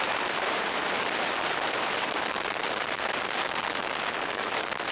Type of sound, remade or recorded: remade